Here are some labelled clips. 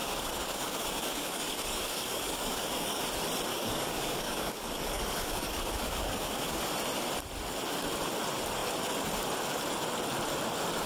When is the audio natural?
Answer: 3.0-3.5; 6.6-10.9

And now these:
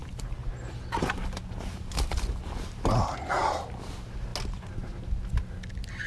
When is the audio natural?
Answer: 0.0-6.1

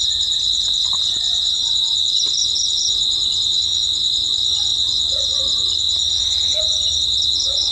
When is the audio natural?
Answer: 0.0-2.9; 3.6-7.7

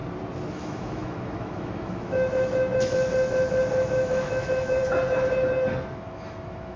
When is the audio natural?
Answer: 0.0-0.5; 4.8-5.9

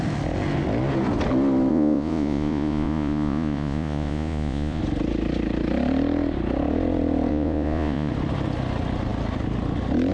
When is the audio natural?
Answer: 0.0-1.7; 4.8-7.3; 8.1-10.1

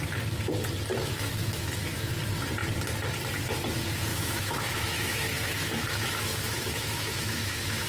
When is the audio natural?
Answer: 0.0-0.9; 2.1-4.1